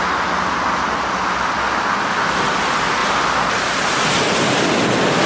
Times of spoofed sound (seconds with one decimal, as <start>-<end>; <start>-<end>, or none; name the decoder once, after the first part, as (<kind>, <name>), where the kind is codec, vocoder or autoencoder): 3.0-4.5 (vocoder, BigVGAN v2)